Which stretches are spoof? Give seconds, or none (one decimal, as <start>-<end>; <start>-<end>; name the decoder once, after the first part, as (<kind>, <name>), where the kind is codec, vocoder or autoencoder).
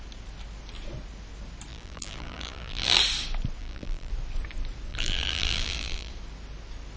1.7-3.0 (vocoder, BigVGAN v2); 3.6-4.1; 4.9-6.1